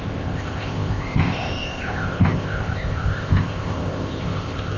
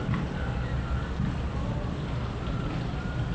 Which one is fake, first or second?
first